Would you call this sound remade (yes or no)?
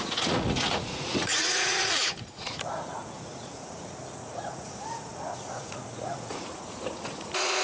yes